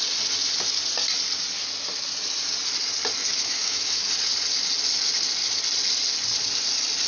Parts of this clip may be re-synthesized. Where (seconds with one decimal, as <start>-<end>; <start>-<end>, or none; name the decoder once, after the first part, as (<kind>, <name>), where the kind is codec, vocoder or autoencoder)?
3.2-4.1 (autoencoder, DAC-VAE)